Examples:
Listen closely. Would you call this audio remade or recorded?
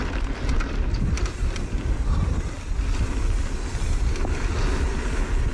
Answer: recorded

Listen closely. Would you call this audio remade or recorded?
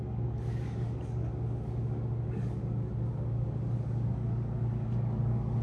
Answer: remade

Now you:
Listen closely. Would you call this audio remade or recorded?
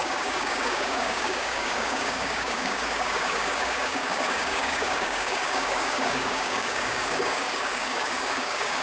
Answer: remade